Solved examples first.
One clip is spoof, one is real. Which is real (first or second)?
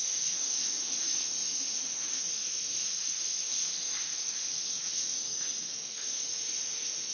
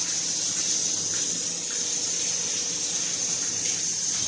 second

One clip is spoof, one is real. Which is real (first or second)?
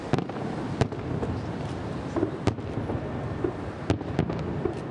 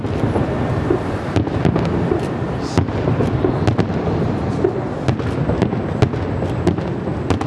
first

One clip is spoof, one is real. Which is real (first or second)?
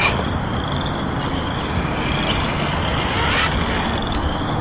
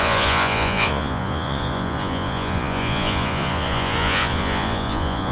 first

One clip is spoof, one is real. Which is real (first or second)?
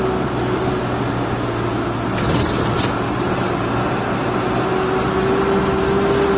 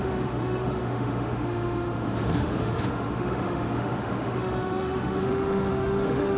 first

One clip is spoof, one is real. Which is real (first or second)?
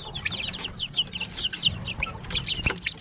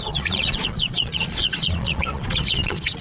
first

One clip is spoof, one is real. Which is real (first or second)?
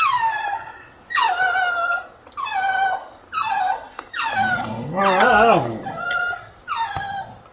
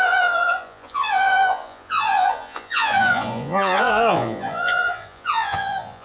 first